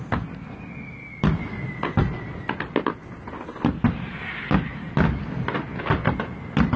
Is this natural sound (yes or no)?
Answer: yes